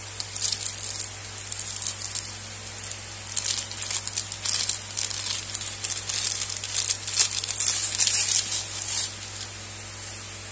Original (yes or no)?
yes